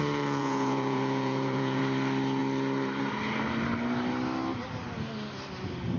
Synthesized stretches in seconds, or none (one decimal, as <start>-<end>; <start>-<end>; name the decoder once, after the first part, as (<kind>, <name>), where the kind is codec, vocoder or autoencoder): 0.4-1.8 (vocoder, Vocos)